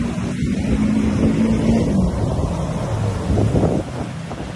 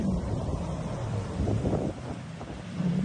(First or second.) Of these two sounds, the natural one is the first